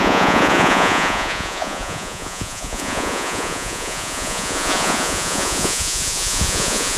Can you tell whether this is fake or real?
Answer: fake